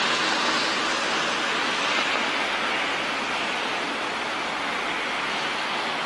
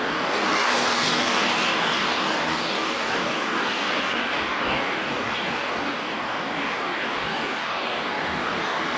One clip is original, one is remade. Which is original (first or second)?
first